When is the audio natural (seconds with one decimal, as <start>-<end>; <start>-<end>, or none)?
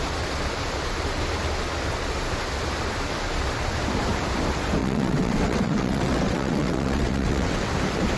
0.0-4.8; 7.7-8.2